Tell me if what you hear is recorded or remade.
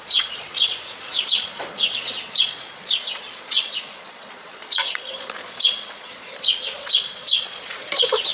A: remade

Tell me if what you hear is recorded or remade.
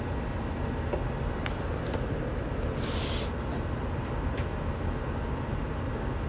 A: recorded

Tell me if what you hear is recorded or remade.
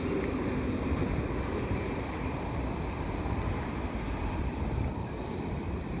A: recorded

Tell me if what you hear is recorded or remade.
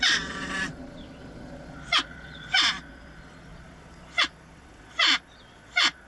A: remade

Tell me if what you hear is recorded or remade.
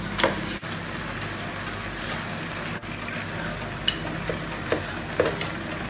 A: recorded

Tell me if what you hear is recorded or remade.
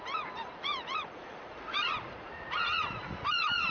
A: remade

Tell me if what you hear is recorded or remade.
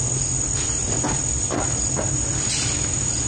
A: recorded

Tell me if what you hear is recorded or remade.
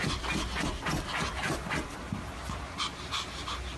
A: recorded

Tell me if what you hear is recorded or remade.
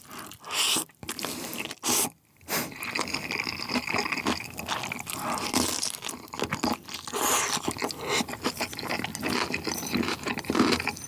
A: recorded